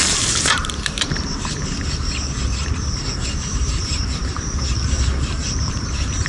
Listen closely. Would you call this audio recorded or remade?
remade